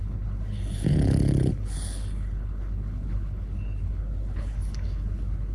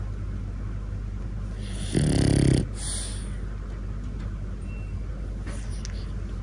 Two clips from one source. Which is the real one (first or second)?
second